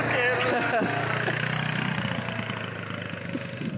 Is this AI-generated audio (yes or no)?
no